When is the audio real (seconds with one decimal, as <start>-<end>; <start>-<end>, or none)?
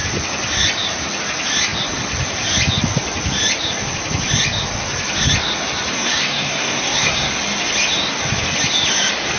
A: 0.0-5.9; 7.3-9.4